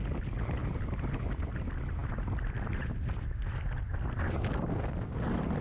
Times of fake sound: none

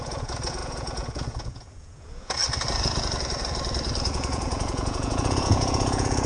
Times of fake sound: 0.0-2.4; 4.1-6.3

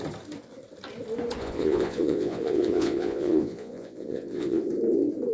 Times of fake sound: 1.4-4.6

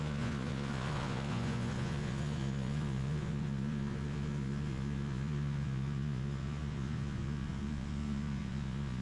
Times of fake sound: 0.0-9.0

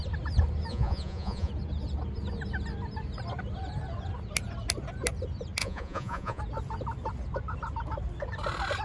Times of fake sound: 0.7-1.5; 5.6-6.4